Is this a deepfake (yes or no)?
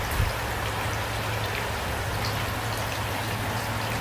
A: no